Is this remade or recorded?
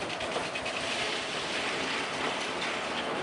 recorded